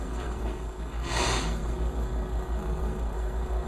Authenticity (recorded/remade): remade